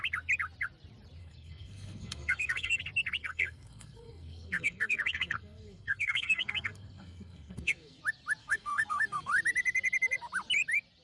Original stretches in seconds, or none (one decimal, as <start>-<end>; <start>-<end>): 0.0-1.2; 2.8-3.2; 8.0-8.4; 9.3-11.0